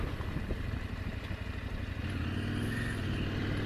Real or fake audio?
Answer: real